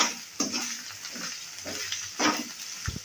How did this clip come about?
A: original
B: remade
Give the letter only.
A